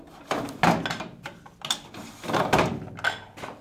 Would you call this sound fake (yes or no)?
no